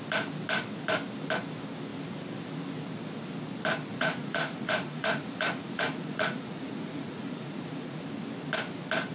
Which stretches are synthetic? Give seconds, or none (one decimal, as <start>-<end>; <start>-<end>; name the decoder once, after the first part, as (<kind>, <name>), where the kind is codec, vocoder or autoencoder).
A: 3.9-8.0 (vocoder, Vocos)

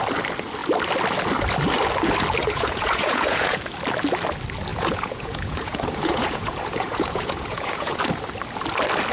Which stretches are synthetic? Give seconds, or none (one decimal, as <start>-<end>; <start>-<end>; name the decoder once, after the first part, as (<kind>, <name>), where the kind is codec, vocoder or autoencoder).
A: 2.4-3.6 (vocoder, Vocos); 4.7-8.0

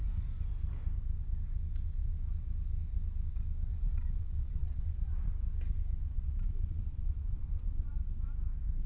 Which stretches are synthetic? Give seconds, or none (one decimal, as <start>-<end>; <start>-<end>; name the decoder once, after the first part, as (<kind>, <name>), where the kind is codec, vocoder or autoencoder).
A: 3.7-5.3 (vocoder, Vocos); 6.0-7.9

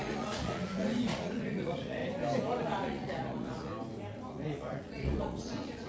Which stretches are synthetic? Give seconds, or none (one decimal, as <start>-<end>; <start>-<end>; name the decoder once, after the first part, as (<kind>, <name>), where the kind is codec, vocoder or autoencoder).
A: 0.0-2.0 (vocoder, Vocos); 2.5-3.7; 4.3-5.9

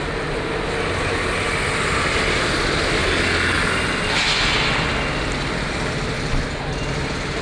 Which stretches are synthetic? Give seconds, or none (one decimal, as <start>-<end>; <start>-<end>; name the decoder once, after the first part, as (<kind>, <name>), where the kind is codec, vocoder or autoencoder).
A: none